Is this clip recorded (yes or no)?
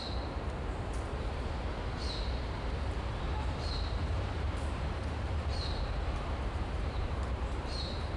no